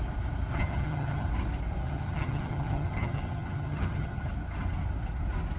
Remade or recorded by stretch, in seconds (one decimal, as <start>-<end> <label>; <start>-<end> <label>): 0.0-0.5 recorded; 0.5-1.3 remade; 1.3-1.8 recorded; 1.8-4.3 remade; 4.3-5.6 recorded